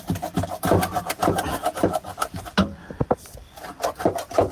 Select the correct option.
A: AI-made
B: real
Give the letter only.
B